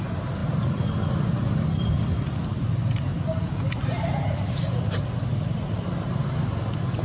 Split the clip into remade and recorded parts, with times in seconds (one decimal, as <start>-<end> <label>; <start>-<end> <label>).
0.0-7.0 recorded